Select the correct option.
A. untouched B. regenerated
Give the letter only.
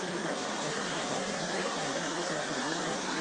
B